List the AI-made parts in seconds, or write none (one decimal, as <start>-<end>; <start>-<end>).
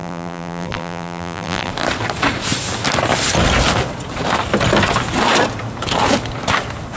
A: 0.0-1.7